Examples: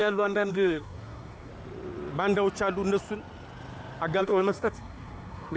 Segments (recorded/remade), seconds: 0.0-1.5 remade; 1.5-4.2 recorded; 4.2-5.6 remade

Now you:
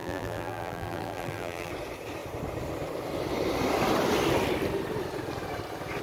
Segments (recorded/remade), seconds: 0.0-1.7 remade; 1.7-6.0 recorded